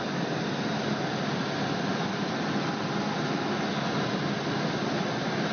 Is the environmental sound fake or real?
real